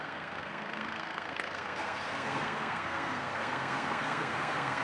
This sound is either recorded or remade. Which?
remade